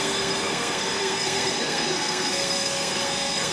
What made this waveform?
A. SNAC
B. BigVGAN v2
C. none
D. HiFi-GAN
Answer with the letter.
A